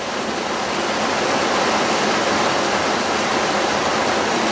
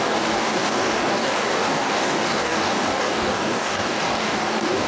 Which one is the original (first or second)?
first